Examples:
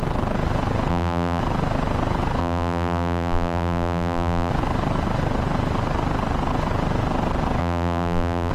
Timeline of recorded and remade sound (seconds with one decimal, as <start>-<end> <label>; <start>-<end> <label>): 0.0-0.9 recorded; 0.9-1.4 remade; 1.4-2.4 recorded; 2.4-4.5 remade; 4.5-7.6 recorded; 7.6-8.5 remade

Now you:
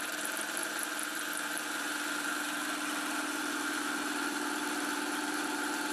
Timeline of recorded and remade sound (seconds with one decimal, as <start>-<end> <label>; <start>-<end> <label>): 0.0-5.9 remade

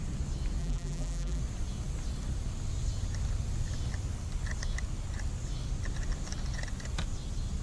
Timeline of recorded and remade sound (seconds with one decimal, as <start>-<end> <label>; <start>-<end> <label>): 0.0-0.6 recorded; 0.6-1.4 remade; 1.4-7.6 recorded